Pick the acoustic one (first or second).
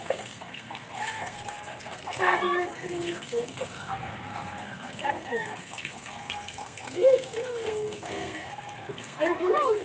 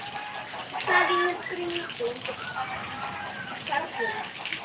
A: second